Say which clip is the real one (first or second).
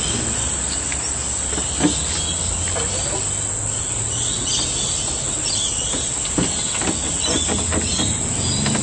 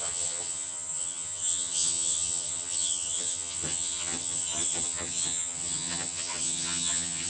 first